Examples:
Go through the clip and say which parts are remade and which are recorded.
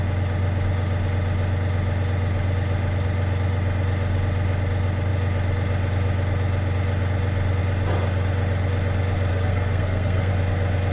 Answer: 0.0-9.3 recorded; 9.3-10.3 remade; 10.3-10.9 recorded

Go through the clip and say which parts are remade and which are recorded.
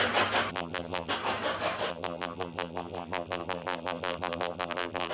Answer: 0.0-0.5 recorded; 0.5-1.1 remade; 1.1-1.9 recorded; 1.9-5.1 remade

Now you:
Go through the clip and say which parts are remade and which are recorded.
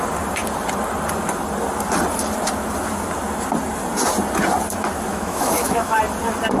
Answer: 0.0-5.1 recorded; 5.1-6.0 remade; 6.0-6.6 recorded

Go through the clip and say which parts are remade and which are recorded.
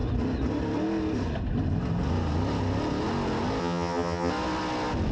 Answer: 0.0-3.6 recorded; 3.6-4.3 remade; 4.3-5.1 recorded